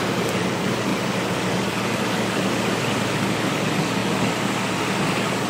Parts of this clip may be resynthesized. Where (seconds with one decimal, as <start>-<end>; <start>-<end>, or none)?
0.0-5.5

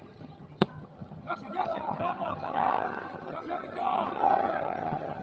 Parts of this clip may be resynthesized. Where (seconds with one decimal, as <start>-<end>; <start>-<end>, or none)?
0.0-5.2

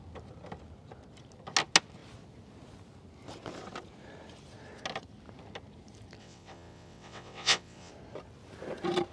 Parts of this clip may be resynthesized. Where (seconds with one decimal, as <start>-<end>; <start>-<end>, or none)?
6.2-7.9

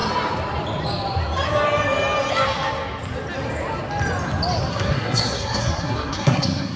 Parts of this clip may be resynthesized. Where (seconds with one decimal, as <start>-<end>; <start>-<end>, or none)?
4.7-6.8

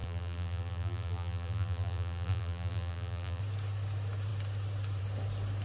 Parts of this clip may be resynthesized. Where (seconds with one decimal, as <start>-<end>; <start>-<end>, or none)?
0.0-3.4

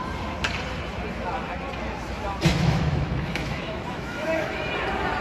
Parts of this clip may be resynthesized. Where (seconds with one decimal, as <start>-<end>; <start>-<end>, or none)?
2.5-4.7

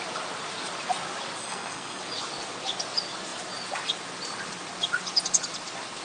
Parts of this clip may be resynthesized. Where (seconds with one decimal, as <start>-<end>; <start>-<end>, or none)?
1.4-2.0